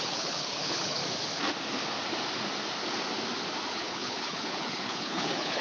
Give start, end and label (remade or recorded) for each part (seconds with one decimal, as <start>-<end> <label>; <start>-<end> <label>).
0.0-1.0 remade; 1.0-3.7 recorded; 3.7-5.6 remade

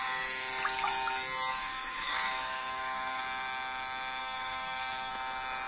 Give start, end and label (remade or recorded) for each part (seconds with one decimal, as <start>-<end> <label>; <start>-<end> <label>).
0.0-1.5 recorded; 1.5-3.2 remade; 3.2-4.2 recorded; 4.2-5.1 remade; 5.1-5.7 recorded

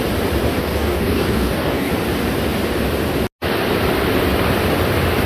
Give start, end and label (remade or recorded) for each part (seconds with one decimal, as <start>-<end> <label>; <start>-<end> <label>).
0.0-0.6 recorded; 0.6-1.9 remade; 1.9-5.3 recorded